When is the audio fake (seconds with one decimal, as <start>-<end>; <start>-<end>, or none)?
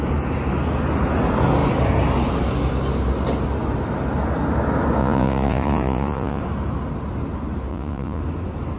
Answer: 5.0-6.4; 7.7-8.2